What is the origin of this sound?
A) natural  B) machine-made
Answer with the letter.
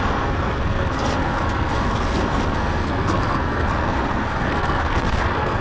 B